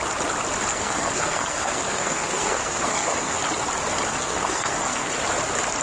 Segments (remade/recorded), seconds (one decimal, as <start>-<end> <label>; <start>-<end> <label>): 0.0-0.7 recorded; 0.7-3.4 remade; 3.4-4.1 recorded; 4.1-5.1 remade; 5.1-5.8 recorded